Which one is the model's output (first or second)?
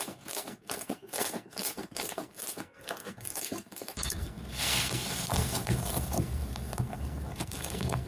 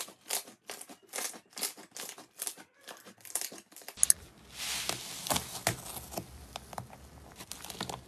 first